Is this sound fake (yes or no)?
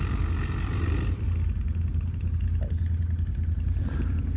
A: no